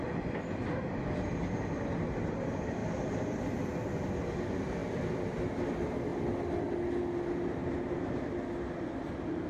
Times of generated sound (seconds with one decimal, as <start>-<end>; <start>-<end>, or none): 7.6-8.2